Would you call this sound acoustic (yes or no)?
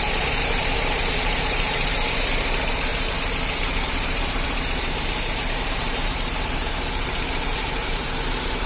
no